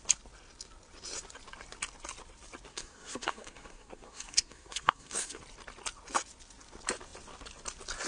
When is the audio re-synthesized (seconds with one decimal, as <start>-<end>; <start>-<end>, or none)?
2.7-5.4